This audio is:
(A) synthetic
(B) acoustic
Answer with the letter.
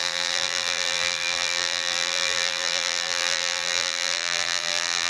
A